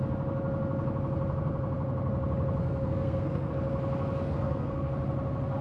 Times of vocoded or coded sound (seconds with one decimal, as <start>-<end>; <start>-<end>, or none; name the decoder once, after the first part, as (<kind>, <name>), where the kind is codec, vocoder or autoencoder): 2.6-3.5 (codec, SNAC); 4.2-4.9